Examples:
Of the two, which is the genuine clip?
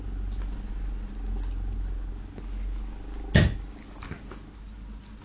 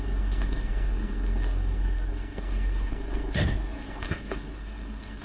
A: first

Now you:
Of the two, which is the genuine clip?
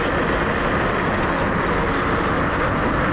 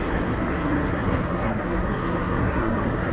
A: first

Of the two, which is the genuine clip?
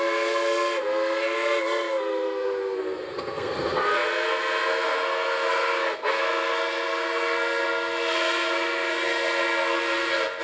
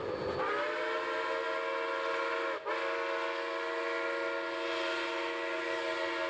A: second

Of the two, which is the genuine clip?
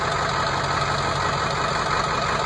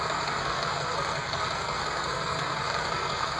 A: first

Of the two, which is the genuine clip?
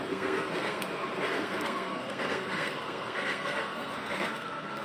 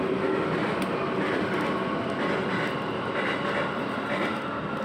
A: second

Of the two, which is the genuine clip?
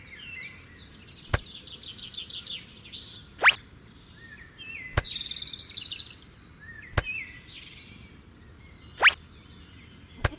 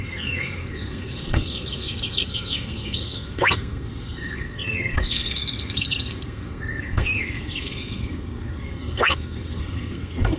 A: first